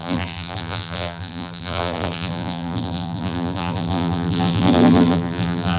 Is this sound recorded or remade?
remade